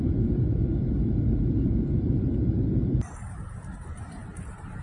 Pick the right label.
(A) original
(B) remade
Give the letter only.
B